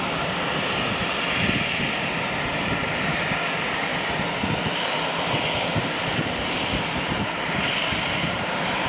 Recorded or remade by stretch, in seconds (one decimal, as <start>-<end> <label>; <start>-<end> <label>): 0.0-3.9 remade; 3.9-5.2 recorded; 5.2-8.9 remade